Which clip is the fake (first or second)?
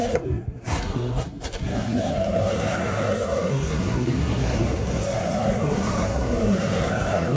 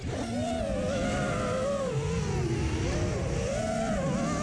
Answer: first